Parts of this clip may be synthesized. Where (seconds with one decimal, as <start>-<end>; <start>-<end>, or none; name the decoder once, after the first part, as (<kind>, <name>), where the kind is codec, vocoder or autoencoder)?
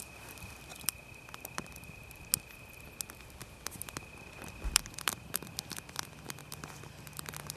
0.0-0.7 (vocoder, BigVGAN v2); 4.7-6.4; 6.9-7.6